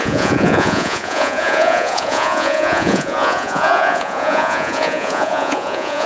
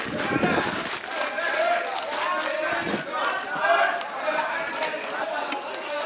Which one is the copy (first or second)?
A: first